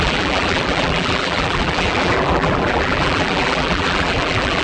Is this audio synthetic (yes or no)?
yes